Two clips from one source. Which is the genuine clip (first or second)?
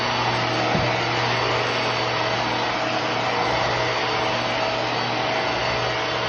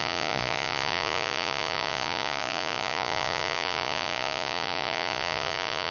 first